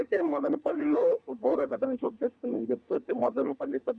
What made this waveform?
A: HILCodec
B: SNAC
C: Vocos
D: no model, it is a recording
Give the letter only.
B